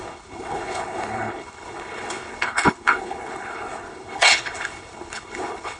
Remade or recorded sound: remade